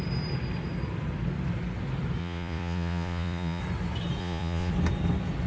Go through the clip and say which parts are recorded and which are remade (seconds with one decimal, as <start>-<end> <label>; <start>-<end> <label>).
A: 0.0-2.2 recorded; 2.2-3.6 remade; 3.6-4.2 recorded; 4.2-4.7 remade; 4.7-5.5 recorded